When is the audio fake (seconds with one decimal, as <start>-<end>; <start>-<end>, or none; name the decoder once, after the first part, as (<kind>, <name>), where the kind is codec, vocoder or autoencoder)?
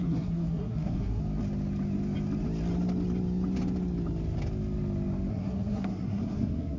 0.0-1.2 (codec, SNAC); 5.3-6.8